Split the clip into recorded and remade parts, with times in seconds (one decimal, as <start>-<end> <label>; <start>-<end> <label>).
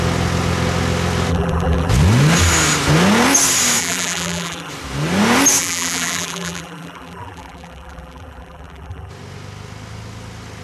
0.0-1.3 recorded; 1.3-1.9 remade; 1.9-3.8 recorded; 3.8-4.7 remade; 4.7-5.6 recorded; 5.6-9.1 remade; 9.1-10.6 recorded